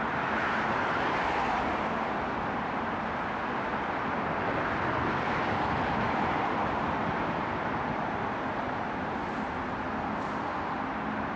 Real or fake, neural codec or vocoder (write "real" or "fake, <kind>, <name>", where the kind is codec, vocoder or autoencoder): real